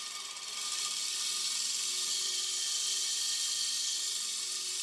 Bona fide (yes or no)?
yes